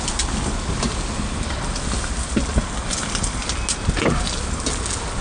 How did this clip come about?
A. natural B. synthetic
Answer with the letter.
A